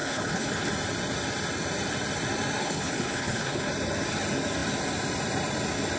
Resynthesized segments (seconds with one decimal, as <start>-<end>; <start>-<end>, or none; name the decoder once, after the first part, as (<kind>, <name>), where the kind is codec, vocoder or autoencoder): 0.0-0.7 (codec, HILCodec); 2.6-3.7